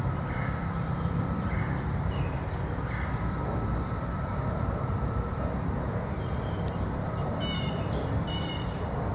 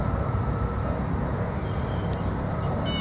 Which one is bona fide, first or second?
second